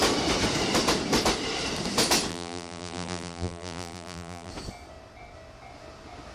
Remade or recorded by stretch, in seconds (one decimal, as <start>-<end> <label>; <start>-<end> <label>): 0.0-2.3 recorded; 2.3-4.5 remade; 4.5-6.3 recorded